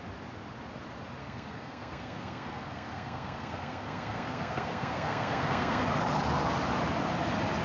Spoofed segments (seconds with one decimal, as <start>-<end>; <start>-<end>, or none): 1.2-5.8